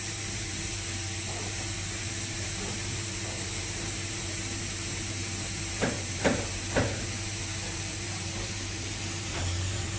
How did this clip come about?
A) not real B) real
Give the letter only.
A